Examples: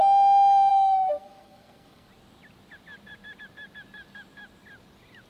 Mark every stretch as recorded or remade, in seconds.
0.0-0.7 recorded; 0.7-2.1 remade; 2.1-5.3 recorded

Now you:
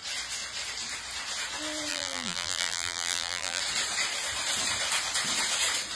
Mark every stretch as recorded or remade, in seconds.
0.0-1.9 recorded; 1.9-3.6 remade; 3.6-6.0 recorded

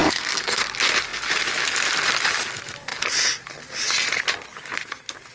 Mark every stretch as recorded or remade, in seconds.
0.0-0.6 remade; 0.6-5.3 recorded

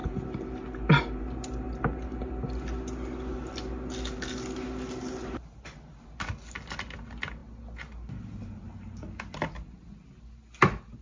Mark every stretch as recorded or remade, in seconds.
0.0-11.0 recorded

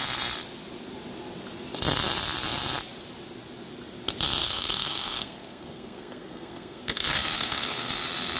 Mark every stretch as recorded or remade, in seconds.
0.0-4.4 recorded; 4.4-7.9 remade; 7.9-8.4 recorded

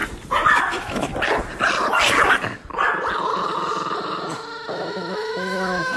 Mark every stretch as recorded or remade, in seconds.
0.0-0.5 recorded; 0.5-1.1 remade; 1.1-4.7 recorded; 4.7-6.0 remade

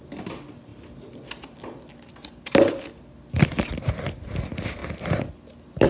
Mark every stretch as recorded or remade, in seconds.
0.0-5.9 recorded